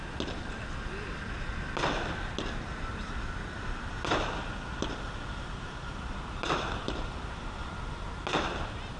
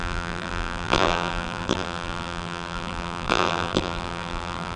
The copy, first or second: second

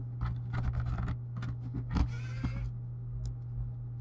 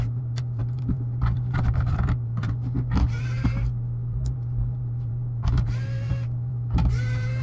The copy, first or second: second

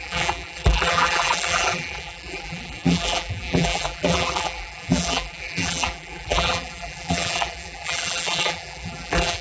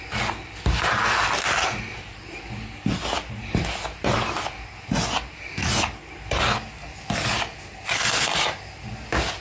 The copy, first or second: first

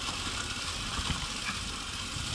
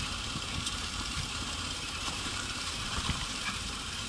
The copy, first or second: second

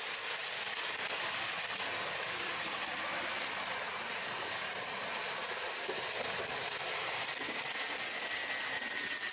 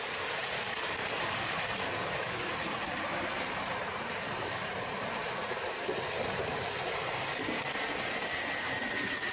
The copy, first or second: second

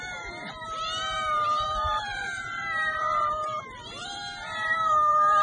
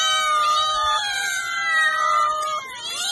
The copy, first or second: first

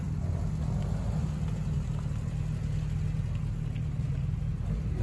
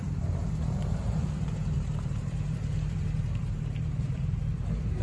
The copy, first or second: second